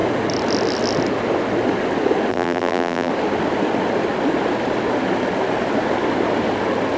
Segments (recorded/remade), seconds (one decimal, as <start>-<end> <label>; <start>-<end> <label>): 0.0-2.3 recorded; 2.3-3.1 remade; 3.1-7.0 recorded